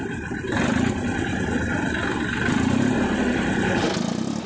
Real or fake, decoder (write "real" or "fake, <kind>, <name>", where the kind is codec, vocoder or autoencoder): real